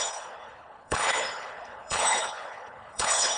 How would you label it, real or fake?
fake